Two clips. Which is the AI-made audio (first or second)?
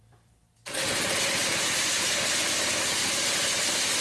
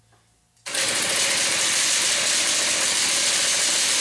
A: first